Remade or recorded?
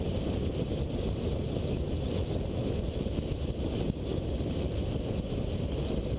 recorded